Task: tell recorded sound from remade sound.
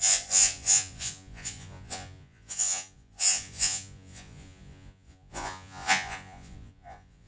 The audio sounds remade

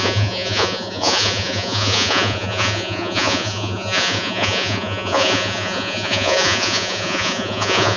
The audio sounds remade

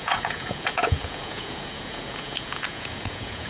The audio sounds remade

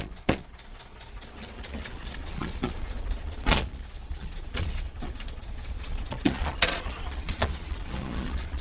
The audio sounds remade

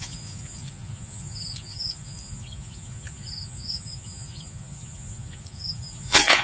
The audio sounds remade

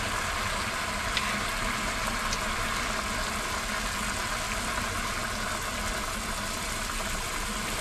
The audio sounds recorded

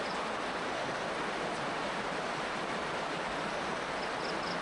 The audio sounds recorded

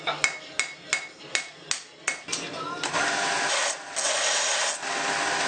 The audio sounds recorded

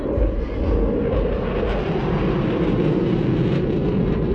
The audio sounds recorded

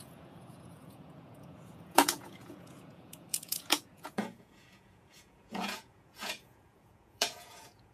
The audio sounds remade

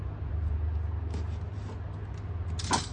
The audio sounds recorded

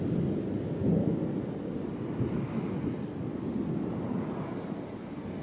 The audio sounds recorded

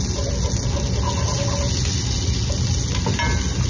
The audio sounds recorded